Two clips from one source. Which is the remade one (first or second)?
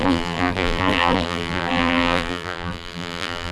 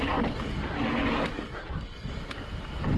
first